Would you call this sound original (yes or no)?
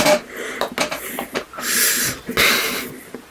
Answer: yes